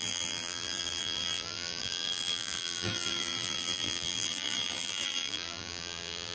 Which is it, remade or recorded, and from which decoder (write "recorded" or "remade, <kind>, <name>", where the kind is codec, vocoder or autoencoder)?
remade, vocoder, BigVGAN v2